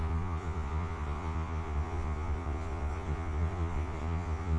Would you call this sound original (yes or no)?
no